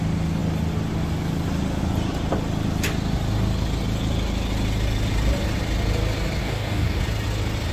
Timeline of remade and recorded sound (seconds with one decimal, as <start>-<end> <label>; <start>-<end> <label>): 0.0-6.4 recorded; 6.4-7.0 remade; 7.0-7.7 recorded